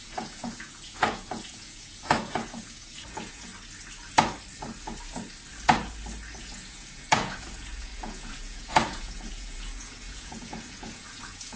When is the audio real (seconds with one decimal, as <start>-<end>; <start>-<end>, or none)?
3.5-6.4